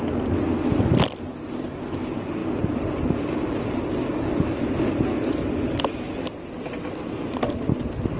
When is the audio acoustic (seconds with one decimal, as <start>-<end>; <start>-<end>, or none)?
0.0-8.2